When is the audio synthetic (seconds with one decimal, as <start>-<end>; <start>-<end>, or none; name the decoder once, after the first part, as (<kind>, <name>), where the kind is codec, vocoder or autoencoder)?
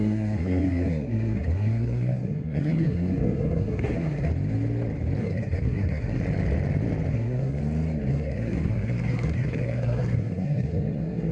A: 0.0-4.3 (codec, SNAC); 5.2-6.2; 7.1-7.6; 8.1-11.3